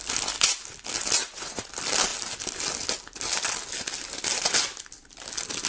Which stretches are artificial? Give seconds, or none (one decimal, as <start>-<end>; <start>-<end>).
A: 1.2-1.7